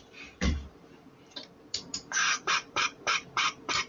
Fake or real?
fake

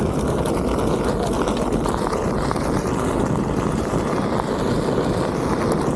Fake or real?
real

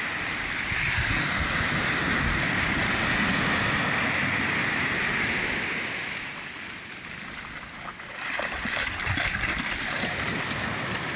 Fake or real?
real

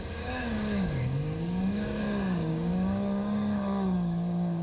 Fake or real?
fake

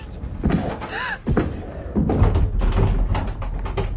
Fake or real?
real